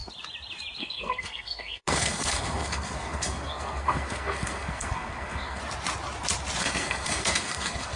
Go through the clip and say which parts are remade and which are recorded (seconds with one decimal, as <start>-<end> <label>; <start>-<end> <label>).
0.0-0.8 recorded; 0.8-5.6 remade; 5.6-6.6 recorded; 6.6-8.0 remade